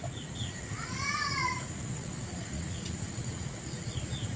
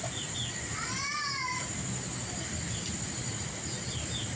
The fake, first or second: first